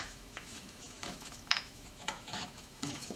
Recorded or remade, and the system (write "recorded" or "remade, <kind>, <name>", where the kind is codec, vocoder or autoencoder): remade, autoencoder, DAC-VAE